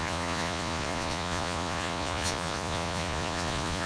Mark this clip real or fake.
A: fake